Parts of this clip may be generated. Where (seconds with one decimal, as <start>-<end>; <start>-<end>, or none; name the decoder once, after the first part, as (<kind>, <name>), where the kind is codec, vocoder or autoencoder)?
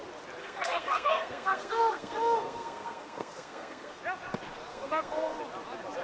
0.4-4.0 (codec, SNAC); 4.7-5.4